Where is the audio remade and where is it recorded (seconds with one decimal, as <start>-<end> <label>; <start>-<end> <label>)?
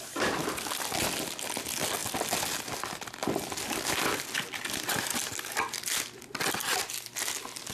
0.0-7.7 recorded